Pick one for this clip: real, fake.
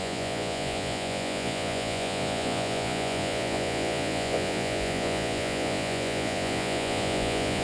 fake